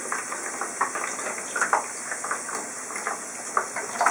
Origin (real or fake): real